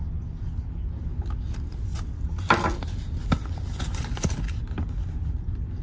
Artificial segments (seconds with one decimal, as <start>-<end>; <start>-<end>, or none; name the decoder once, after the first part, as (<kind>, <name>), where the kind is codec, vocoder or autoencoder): none